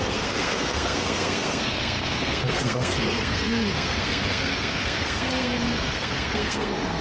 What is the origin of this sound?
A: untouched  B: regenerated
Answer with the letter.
B